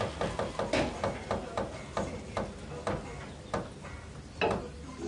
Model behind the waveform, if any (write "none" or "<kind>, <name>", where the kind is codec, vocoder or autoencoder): none